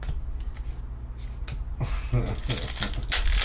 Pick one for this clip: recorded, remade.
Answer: recorded